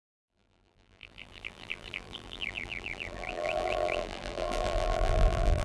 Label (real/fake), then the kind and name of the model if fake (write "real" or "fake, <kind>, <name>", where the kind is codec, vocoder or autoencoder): fake, vocoder, BigVGAN v2